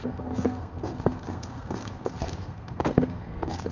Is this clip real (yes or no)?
no